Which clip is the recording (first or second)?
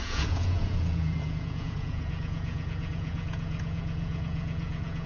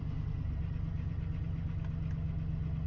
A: second